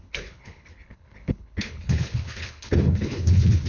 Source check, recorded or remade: remade